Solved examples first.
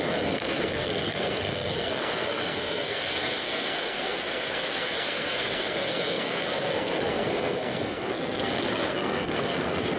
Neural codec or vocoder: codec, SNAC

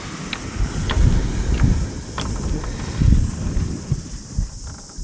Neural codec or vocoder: none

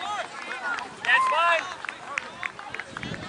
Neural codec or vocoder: none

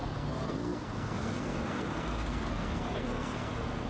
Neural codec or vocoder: codec, SNAC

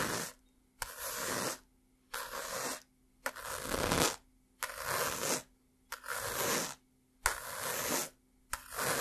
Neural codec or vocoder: none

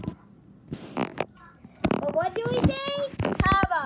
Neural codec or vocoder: none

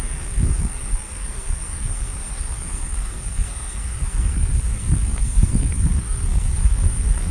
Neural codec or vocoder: codec, SNAC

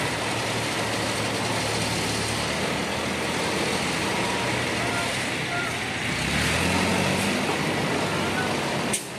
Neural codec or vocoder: none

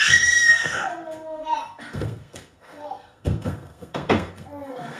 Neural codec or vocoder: codec, SNAC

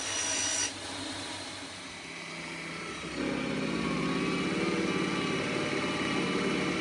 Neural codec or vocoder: none